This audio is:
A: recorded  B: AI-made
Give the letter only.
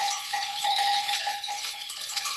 B